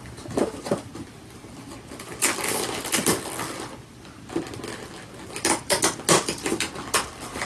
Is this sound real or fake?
real